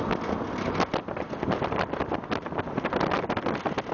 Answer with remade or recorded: recorded